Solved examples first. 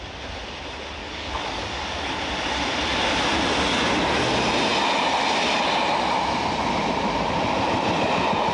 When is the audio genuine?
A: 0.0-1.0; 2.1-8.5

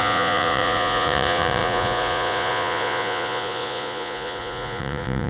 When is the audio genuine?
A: none

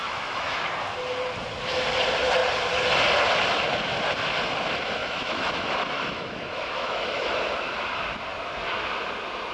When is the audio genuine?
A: 0.7-5.0; 7.3-9.5

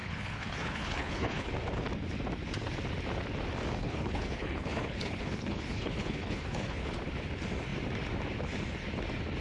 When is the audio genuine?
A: 1.5-3.8; 6.9-9.4